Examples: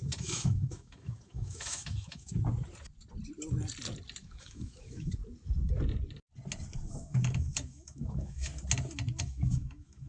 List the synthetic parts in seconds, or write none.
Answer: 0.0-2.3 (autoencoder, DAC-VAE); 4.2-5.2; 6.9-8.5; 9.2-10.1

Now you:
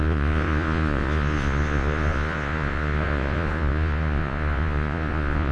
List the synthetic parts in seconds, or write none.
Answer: 0.0-5.5 (vocoder, Vocos)

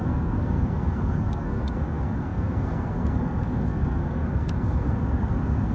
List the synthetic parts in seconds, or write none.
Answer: 0.0-5.7 (codec, SNAC)

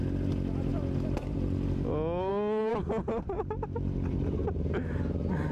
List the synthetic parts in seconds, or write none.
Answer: none

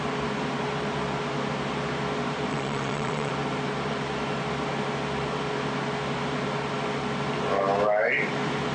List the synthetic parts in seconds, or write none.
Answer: 2.5-3.3 (vocoder, WaveNeXt)

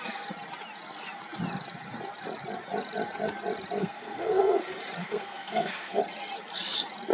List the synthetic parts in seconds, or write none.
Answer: 3.8-4.6 (codec, SNAC); 5.0-6.0

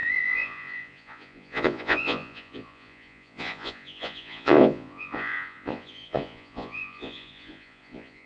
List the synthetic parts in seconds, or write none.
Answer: 0.0-8.3 (vocoder, Vocos)